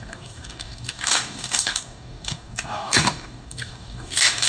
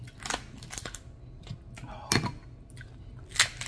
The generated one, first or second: first